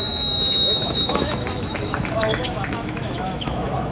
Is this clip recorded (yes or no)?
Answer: no